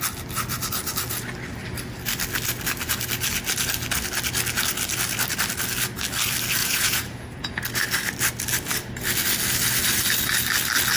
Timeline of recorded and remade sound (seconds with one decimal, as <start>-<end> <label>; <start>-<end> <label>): 0.0-6.6 recorded; 6.6-7.6 remade; 7.6-11.0 recorded